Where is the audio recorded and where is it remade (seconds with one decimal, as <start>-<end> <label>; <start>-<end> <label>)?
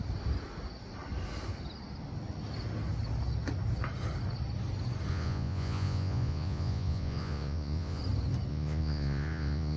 0.0-5.1 recorded; 5.1-8.0 remade; 8.0-8.5 recorded; 8.5-9.8 remade